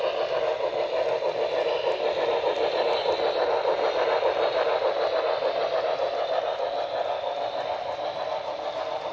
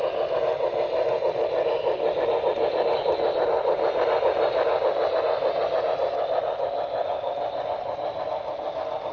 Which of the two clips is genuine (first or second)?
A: second